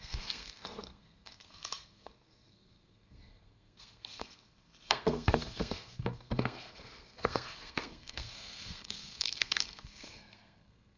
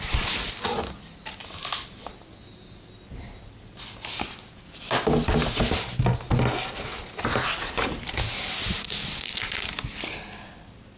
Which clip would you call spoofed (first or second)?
first